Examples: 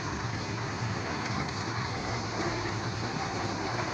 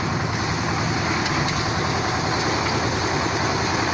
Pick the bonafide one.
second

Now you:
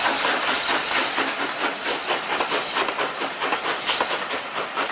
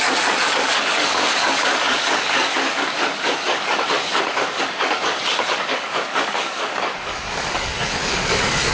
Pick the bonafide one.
first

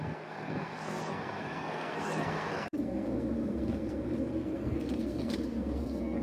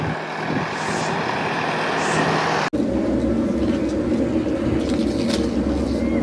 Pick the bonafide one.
second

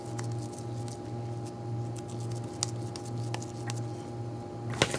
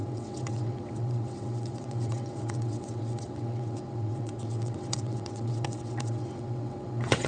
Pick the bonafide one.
first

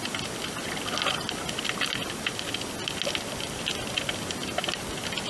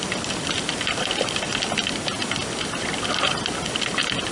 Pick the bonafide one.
first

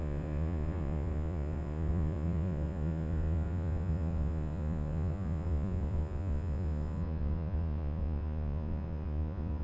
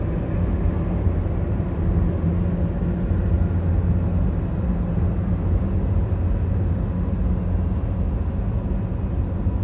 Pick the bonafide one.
second